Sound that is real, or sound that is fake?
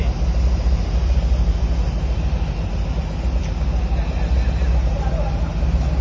real